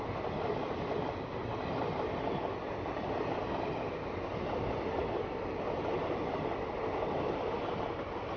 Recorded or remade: recorded